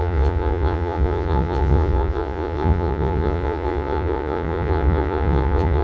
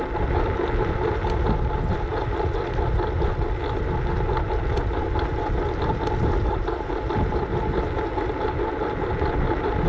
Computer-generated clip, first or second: first